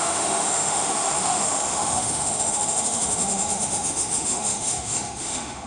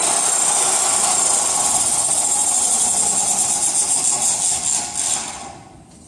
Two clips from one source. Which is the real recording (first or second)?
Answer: second